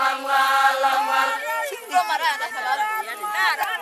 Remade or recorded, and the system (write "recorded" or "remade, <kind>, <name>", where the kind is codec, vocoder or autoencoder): recorded